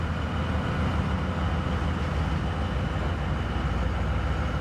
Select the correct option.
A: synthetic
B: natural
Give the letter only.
B